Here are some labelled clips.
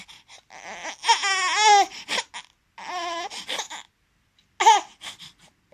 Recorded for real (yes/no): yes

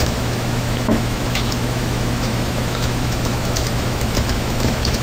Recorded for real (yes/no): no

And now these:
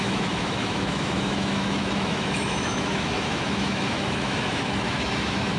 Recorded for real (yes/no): no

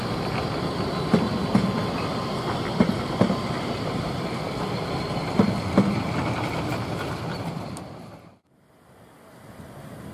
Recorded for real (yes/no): yes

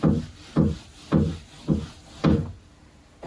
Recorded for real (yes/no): yes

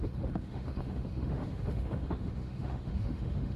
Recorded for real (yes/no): no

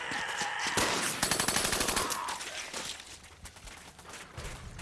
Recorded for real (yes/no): yes